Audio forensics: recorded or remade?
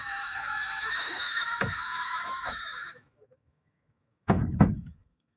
remade